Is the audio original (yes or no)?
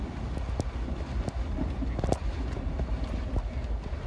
yes